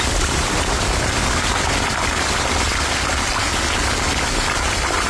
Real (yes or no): yes